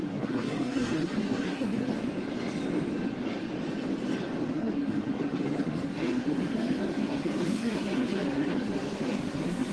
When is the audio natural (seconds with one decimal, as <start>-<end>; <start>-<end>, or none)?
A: 1.9-4.5